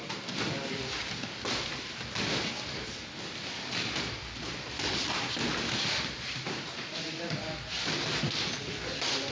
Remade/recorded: recorded